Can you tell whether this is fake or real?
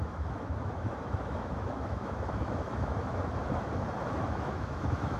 fake